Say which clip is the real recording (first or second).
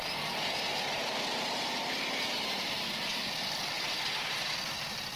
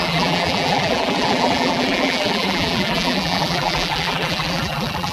first